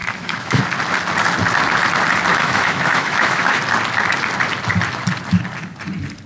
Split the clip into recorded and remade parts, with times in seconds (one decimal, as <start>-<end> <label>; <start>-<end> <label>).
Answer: 0.0-0.6 remade; 0.6-2.3 recorded; 2.3-3.6 remade; 3.6-6.3 recorded